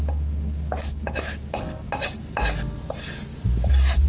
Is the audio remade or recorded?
recorded